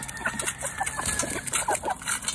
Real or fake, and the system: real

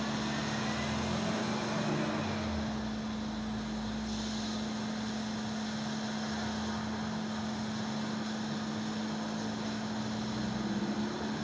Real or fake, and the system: real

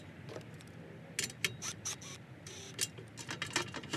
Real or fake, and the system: real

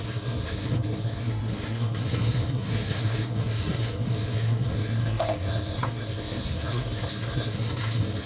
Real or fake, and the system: fake, codec, SNAC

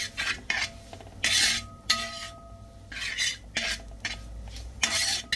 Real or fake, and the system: real